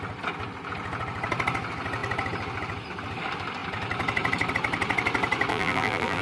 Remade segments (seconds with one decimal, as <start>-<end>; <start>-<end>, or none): 5.5-6.2